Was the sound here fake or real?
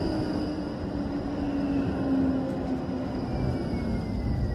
real